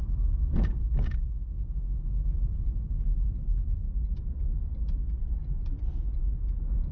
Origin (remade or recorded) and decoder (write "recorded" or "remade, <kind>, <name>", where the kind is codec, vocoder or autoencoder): recorded